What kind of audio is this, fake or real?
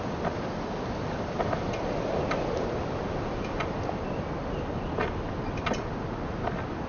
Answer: real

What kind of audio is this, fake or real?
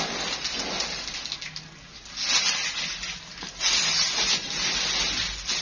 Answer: real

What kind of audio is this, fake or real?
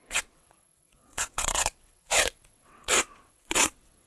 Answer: fake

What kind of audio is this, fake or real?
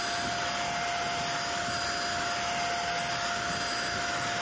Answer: real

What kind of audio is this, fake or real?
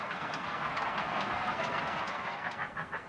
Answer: fake